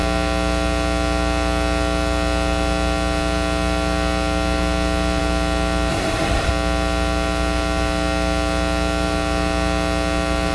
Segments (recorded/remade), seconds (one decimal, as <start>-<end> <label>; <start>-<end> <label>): 0.0-5.9 recorded; 5.9-6.5 remade; 6.5-10.5 recorded